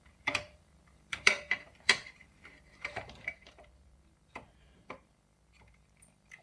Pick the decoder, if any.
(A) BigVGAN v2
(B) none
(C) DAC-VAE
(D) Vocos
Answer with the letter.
A